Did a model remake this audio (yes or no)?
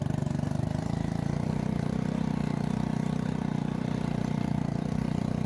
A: no